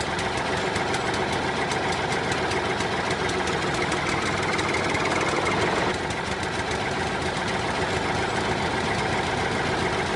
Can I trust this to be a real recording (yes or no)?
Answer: yes